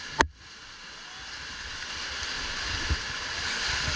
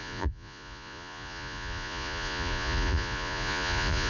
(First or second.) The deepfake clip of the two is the second